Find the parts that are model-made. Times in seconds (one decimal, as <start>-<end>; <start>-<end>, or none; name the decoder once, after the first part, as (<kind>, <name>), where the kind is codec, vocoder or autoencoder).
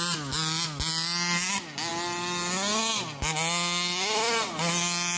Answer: none